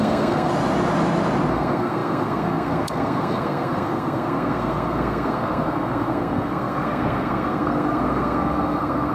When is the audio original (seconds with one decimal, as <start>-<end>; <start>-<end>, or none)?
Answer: 0.5-1.5